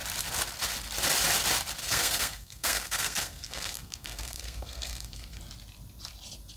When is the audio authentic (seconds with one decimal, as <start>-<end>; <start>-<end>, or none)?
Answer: 0.0-1.8; 5.4-6.6